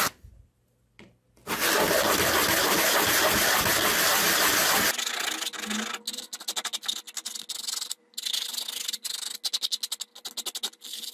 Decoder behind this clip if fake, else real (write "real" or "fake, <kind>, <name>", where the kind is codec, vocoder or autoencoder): real